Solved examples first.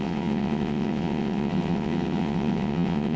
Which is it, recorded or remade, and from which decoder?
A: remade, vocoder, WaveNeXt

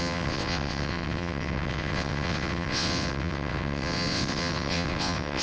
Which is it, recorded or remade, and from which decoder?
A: remade, vocoder, WaveNeXt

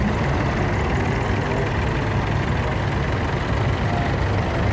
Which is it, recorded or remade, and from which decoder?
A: recorded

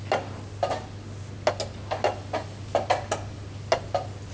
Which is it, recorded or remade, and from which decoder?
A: recorded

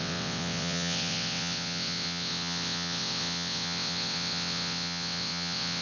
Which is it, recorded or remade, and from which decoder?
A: remade, vocoder, WaveNeXt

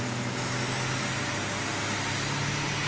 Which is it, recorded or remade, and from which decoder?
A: recorded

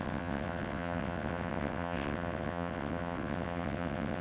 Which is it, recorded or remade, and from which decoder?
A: remade, vocoder, WaveNeXt